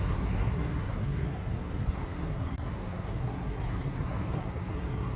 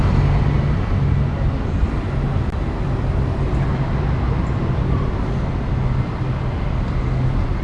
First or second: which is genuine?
second